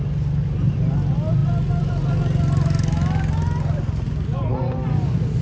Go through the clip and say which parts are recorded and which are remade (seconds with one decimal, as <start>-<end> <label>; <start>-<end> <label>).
0.0-5.4 recorded